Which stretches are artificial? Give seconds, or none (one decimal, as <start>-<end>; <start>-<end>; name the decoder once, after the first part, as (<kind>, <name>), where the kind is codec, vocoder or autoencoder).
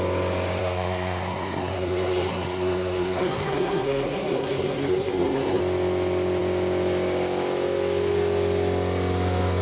0.6-5.6 (codec, SNAC)